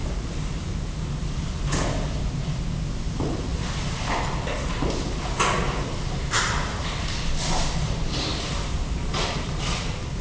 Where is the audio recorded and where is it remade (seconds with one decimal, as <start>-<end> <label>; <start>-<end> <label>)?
0.0-1.0 remade; 1.0-8.3 recorded; 8.3-9.7 remade; 9.7-10.2 recorded